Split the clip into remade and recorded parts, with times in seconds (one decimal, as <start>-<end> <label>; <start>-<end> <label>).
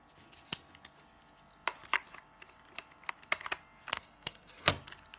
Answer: 0.0-3.9 recorded; 3.9-4.7 remade; 4.7-5.2 recorded